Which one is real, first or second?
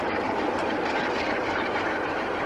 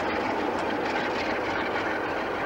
second